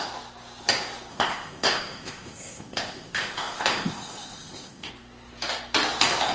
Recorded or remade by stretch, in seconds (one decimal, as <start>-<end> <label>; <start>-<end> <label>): 0.0-1.1 recorded; 1.1-4.9 remade; 4.9-6.3 recorded